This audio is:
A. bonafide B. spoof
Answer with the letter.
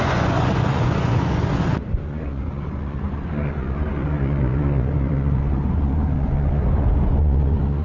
B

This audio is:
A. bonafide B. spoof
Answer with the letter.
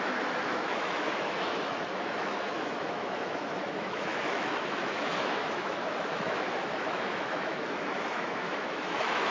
B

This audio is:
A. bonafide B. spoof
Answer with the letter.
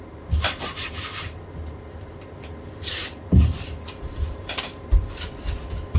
A